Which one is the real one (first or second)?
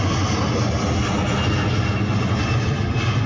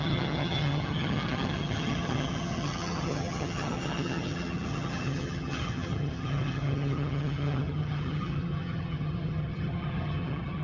first